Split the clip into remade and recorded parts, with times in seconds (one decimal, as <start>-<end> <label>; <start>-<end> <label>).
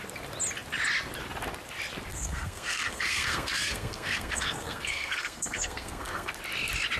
0.0-2.1 recorded; 2.1-6.3 remade; 6.3-7.0 recorded